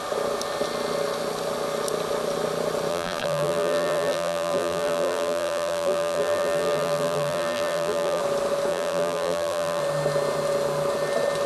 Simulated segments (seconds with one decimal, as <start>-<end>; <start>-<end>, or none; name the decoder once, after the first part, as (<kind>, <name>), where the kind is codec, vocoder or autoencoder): 2.9-8.2 (vocoder, BigVGAN v2); 8.7-9.8